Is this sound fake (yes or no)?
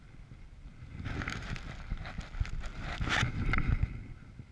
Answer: no